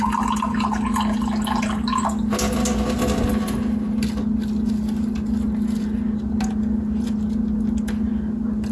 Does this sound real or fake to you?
real